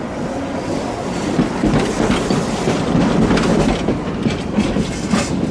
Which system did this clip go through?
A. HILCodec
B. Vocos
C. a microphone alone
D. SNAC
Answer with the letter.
C